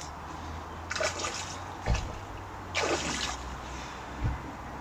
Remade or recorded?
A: recorded